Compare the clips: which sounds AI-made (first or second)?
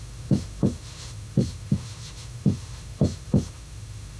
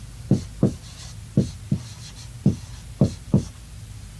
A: first